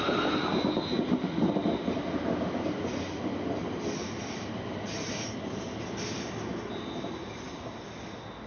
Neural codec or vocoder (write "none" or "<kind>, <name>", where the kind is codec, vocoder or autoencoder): none